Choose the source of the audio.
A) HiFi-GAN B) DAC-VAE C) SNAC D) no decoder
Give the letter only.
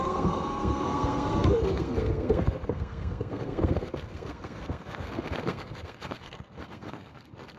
C